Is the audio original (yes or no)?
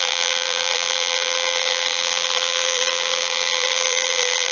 no